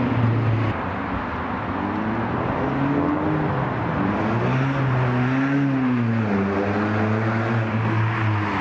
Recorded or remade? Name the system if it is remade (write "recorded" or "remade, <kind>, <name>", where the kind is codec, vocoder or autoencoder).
recorded